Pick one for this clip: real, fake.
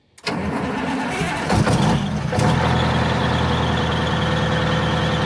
real